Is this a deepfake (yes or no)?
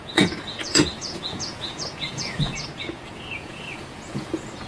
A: yes